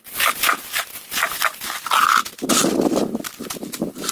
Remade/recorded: recorded